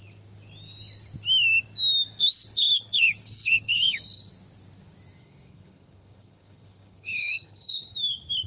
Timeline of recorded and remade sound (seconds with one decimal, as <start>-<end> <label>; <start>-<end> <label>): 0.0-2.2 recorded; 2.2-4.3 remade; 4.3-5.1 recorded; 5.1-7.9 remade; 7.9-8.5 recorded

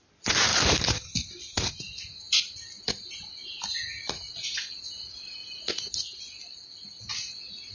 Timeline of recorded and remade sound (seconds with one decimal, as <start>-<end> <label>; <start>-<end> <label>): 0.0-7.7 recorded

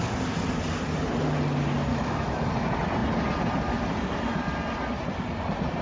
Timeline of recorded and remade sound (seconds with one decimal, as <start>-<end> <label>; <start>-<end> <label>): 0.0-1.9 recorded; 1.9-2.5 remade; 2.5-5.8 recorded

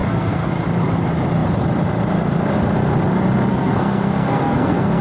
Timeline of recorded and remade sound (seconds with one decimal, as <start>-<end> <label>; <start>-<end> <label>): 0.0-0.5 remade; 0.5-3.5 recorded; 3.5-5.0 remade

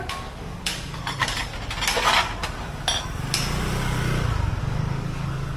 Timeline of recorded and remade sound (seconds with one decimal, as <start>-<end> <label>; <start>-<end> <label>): 0.0-1.5 remade; 1.5-4.6 recorded; 4.6-5.6 remade